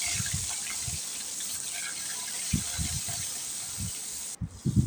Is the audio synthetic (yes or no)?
no